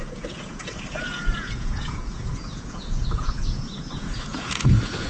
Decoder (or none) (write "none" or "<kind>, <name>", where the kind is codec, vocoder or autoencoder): vocoder, Vocos